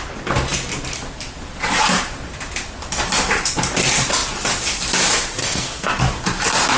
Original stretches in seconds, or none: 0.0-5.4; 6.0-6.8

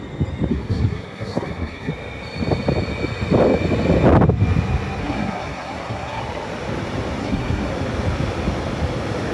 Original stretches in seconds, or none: 0.0-0.5; 1.9-5.0; 6.2-7.2; 7.7-9.3

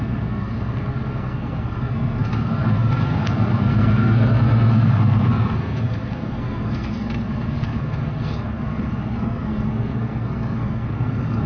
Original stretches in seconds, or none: none

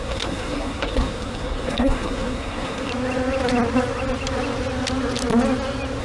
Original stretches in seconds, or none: 2.9-6.0

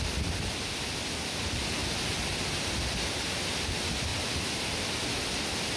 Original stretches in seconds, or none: 0.0-5.8

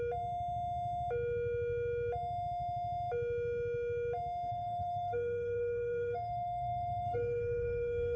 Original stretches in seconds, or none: 0.0-4.5

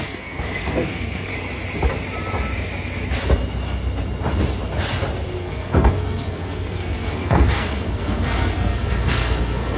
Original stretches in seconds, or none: 1.3-5.4

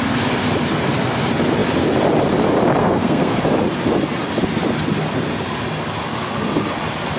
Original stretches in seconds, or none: 0.0-2.8; 3.4-7.2